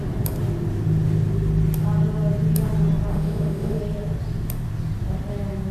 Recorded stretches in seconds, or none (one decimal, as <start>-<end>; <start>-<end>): 0.0-3.1; 3.8-5.7